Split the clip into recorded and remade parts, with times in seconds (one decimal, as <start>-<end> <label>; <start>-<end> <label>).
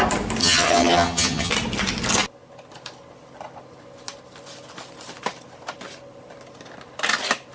0.0-0.4 recorded; 0.4-1.5 remade; 1.5-7.5 recorded